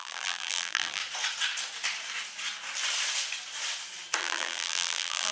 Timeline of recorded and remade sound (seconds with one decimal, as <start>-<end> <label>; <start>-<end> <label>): 0.0-1.0 remade; 1.0-4.2 recorded; 4.2-5.3 remade